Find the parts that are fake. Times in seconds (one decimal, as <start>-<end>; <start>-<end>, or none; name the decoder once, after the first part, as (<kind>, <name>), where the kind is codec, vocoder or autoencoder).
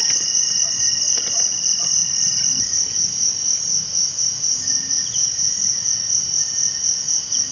none